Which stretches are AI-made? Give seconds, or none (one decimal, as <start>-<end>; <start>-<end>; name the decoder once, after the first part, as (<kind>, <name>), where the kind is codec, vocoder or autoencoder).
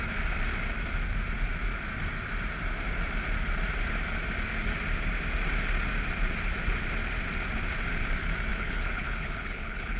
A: 8.5-10.0 (codec, HILCodec)